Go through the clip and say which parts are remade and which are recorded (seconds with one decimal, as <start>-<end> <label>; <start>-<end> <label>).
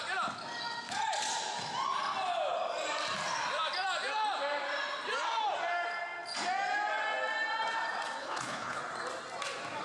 0.0-8.2 recorded; 8.2-8.8 remade; 8.8-9.8 recorded